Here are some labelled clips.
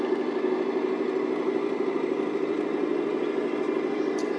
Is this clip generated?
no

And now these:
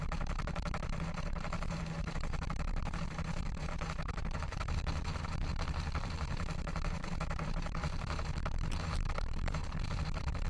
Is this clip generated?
yes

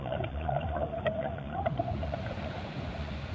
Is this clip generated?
yes